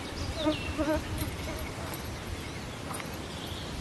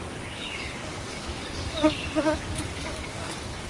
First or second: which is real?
first